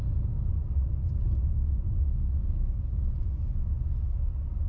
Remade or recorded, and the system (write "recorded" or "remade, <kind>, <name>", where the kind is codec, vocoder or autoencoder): recorded